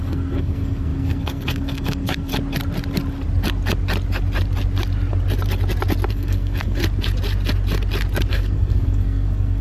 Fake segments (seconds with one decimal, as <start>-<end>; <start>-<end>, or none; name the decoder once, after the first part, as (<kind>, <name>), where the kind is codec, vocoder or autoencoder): 0.0-2.3 (codec, SNAC); 6.1-6.8; 8.3-9.6